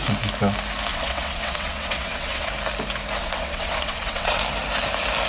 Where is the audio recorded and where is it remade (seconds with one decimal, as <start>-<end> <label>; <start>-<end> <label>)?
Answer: 0.0-0.9 recorded; 0.9-2.5 remade; 2.5-3.2 recorded; 3.2-4.4 remade; 4.4-5.3 recorded

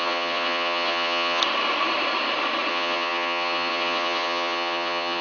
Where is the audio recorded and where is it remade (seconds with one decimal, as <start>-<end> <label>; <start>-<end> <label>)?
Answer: 0.0-1.4 remade; 1.4-2.7 recorded; 2.7-5.2 remade

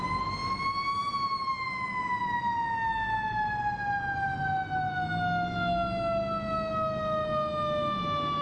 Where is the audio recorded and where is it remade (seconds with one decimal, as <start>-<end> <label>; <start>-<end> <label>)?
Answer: 0.0-8.4 recorded

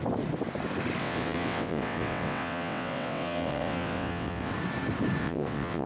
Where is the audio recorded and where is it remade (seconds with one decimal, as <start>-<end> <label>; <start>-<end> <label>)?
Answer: 0.0-1.0 recorded; 1.0-4.5 remade; 4.5-5.2 recorded; 5.2-5.9 remade

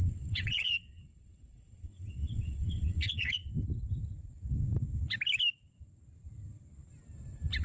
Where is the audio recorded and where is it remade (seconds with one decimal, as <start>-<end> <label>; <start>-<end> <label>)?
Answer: 0.0-3.5 remade; 3.5-7.6 recorded

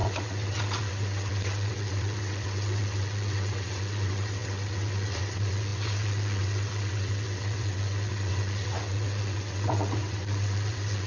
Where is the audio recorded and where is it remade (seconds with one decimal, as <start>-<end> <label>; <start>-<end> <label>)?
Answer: 0.0-11.1 remade

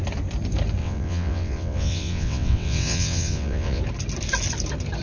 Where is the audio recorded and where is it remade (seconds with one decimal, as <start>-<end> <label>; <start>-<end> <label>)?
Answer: 0.0-0.8 recorded; 0.8-3.8 remade; 3.8-5.0 recorded